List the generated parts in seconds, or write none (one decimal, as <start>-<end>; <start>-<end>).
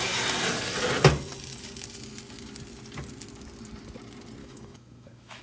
4.4-5.4